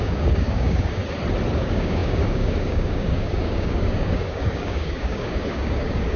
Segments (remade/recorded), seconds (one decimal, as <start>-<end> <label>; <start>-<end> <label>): 0.0-1.0 remade; 1.0-1.5 recorded; 1.5-6.2 remade